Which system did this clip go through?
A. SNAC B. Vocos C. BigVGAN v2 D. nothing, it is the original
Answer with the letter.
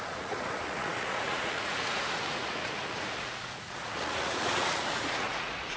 B